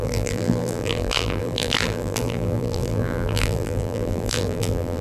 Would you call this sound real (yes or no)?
no